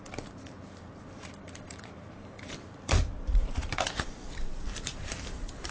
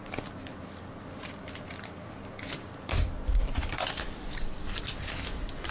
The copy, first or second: first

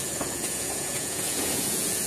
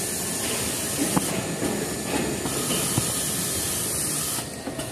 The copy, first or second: first